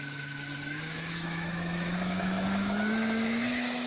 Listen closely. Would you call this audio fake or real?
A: fake